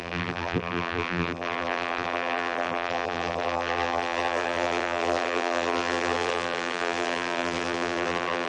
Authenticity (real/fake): fake